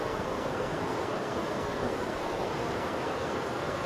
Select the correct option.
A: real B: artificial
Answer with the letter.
B